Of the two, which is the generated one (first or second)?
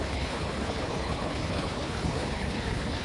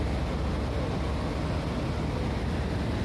first